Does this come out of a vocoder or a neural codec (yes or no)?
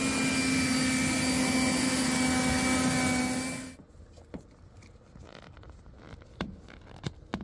no